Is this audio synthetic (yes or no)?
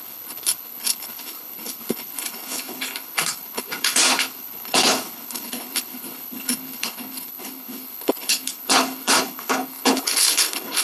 yes